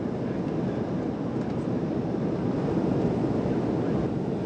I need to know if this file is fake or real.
real